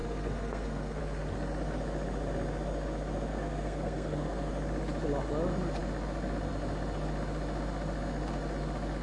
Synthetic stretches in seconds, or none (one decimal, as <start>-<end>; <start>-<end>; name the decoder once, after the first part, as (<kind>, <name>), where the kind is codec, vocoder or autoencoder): 0.0-1.0 (codec, SNAC); 3.3-4.5